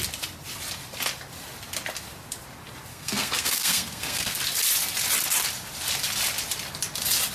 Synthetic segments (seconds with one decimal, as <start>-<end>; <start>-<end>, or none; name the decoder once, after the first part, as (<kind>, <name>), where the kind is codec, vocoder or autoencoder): 2.9-4.4 (codec, SNAC)